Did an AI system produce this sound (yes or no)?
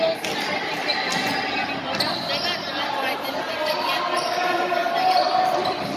no